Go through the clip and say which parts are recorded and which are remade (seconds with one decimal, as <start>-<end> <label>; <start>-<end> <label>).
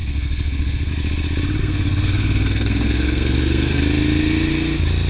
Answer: 0.0-0.9 remade; 0.9-1.6 recorded; 1.6-3.8 remade; 3.8-5.1 recorded